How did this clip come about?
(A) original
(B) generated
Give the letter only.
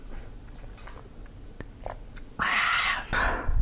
A